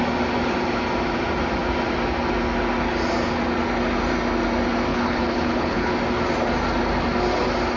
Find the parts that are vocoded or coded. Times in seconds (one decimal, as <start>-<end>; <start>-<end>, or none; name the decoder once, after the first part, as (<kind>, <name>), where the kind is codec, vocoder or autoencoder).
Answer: 4.9-5.9 (codec, HILCodec)

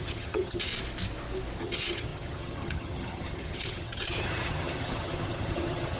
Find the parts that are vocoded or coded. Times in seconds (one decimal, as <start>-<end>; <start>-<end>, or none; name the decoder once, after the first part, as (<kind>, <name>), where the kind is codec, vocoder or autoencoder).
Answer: 0.0-0.7 (vocoder, HiFi-GAN); 1.6-6.0

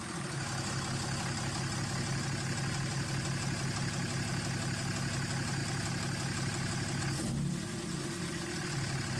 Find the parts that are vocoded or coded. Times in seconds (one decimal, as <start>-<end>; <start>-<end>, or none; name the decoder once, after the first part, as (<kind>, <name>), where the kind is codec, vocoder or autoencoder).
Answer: none

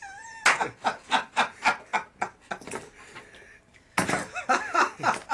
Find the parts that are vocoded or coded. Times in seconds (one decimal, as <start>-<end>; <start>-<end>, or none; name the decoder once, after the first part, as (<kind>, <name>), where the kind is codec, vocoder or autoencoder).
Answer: none

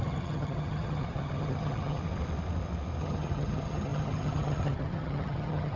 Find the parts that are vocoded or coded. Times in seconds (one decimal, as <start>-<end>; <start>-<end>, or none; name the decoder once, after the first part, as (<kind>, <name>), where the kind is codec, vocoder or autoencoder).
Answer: 0.0-2.0 (vocoder, HiFi-GAN); 3.0-5.8

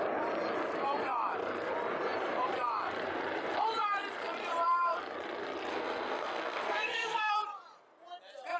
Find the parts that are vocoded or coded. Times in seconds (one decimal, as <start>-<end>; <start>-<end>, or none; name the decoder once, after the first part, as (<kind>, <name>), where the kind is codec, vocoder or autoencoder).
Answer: 5.7-7.3 (codec, SNAC)